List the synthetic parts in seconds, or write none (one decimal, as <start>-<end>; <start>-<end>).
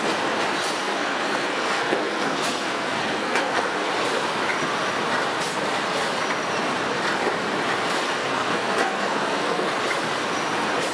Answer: 0.8-3.9; 8.2-9.7